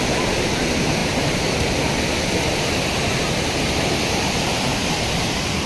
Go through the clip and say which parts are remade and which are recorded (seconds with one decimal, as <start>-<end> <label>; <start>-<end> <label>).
0.0-5.7 remade